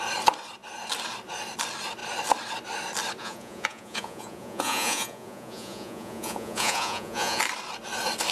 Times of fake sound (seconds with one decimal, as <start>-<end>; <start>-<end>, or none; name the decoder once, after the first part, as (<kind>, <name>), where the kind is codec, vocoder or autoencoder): 3.2-7.4 (vocoder, Vocos)